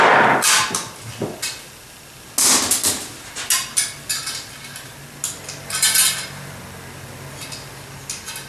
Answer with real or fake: real